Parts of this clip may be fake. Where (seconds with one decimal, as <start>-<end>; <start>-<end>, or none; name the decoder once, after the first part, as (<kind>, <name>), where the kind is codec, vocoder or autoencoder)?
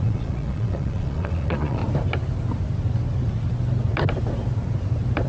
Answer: 0.0-1.8 (vocoder, Vocos)